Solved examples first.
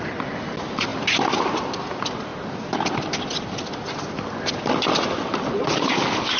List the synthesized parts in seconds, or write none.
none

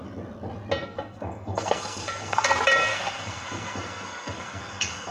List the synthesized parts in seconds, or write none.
0.8-2.5 (codec, SNAC); 2.9-5.1

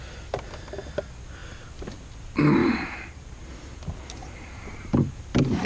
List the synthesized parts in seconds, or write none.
2.6-3.5 (vocoder, BigVGAN v2); 4.2-5.2

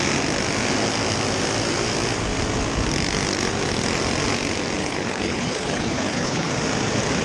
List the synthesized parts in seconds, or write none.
4.8-6.5 (codec, HILCodec)

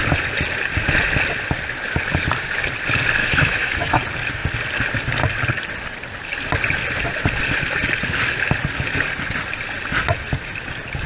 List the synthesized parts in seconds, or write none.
3.2-4.0 (autoencoder, DAC-VAE)

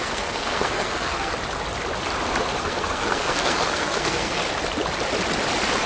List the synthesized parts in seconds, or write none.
0.0-1.3 (codec, SNAC); 2.6-4.4

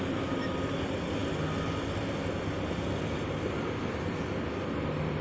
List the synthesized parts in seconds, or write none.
none